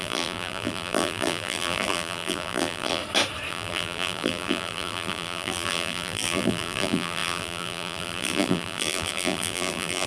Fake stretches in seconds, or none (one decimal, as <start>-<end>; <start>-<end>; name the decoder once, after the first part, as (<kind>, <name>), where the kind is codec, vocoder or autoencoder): 0.0-3.0 (vocoder, BigVGAN v2); 3.5-10.1